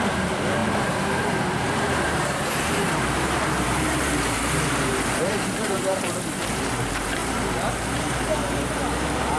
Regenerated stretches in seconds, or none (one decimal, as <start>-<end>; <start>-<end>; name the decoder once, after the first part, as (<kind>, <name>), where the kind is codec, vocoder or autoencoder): 0.0-9.4 (vocoder, BigVGAN v2)